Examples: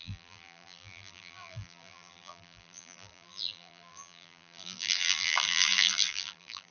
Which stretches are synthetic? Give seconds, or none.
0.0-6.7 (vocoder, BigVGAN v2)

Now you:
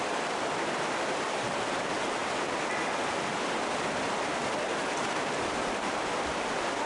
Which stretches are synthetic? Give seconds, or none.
none